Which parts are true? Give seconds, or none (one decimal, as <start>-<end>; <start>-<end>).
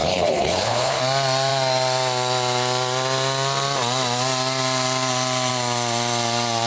1.0-6.7